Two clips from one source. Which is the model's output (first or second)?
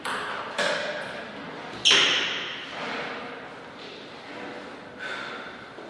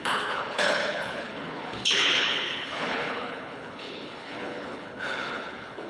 second